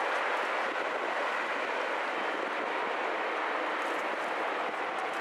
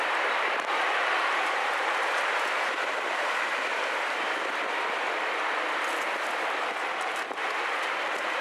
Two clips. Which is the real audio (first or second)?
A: first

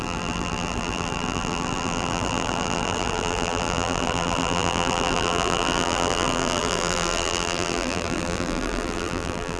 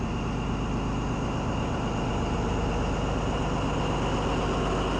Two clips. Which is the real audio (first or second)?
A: second